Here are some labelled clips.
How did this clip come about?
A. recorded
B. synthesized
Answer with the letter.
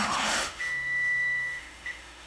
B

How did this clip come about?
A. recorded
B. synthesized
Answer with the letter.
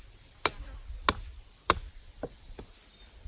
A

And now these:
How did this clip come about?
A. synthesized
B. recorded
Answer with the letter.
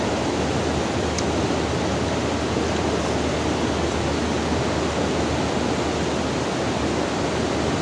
B